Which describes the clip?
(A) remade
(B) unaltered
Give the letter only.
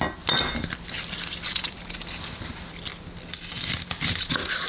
B